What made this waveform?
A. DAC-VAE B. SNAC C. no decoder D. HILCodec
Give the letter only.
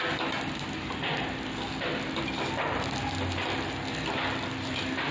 C